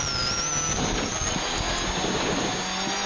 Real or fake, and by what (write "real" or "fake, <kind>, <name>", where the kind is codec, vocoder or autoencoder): real